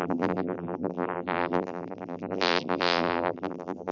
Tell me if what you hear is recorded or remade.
remade